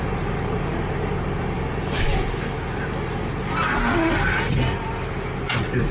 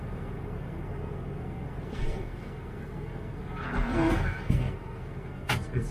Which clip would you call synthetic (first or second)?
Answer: second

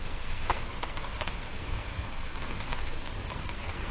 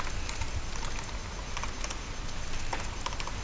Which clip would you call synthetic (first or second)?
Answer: first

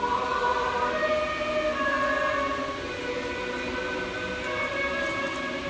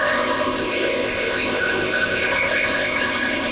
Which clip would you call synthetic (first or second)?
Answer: second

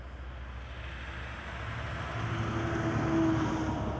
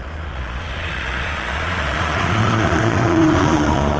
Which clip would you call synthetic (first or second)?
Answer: second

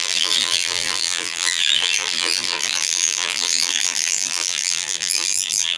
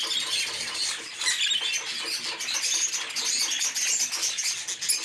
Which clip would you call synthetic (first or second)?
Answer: first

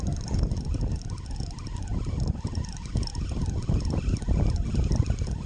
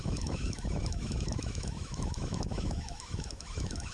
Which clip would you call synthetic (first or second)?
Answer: second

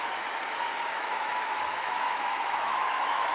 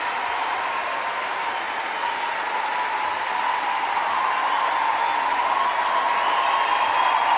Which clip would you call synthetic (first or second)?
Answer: first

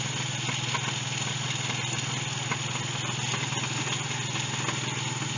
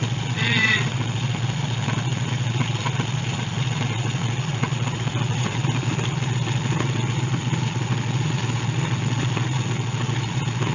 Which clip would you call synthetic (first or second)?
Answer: second